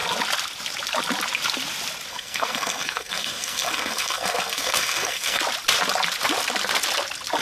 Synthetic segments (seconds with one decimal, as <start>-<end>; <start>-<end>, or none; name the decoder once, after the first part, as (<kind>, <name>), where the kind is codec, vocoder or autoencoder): 2.1-5.4 (codec, SNAC)